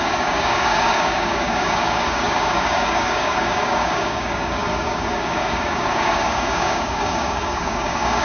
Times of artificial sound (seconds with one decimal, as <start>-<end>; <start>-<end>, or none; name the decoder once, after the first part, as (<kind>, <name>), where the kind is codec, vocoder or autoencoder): 0.0-8.2 (codec, DAC)